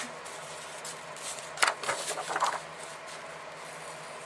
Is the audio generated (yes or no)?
no